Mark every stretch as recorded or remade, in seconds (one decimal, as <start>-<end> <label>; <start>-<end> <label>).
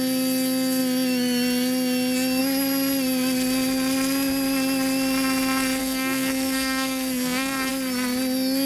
0.0-5.8 recorded; 5.8-7.7 remade; 7.7-8.7 recorded